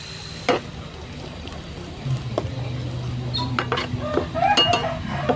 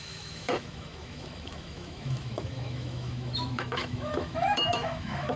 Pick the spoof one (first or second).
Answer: second